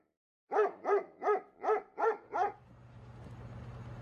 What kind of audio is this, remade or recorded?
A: remade